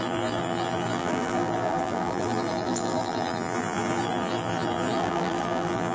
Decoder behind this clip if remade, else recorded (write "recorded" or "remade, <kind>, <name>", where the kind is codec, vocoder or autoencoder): remade, vocoder, BigVGAN v2